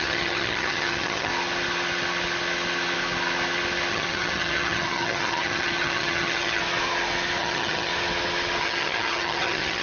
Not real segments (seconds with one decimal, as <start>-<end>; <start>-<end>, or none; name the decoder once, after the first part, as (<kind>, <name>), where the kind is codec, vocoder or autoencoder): 0.0-1.3 (vocoder, HiFi-GAN); 3.9-6.6; 7.4-7.9; 8.6-9.8